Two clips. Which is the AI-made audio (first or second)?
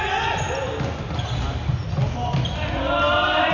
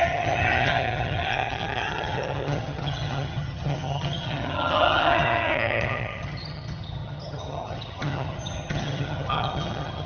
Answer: second